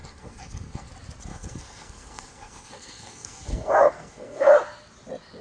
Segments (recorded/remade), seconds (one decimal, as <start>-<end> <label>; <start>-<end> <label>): 0.0-0.9 remade; 0.9-1.3 recorded; 1.3-4.5 remade; 4.5-5.4 recorded